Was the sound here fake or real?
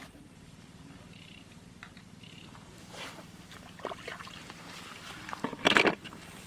fake